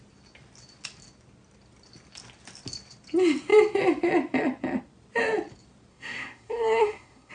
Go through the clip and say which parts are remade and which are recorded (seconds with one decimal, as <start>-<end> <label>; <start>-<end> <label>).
0.0-5.9 recorded; 5.9-7.3 remade